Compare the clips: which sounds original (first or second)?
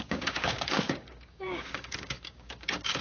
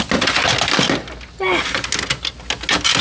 second